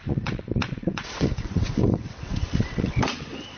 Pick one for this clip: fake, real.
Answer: fake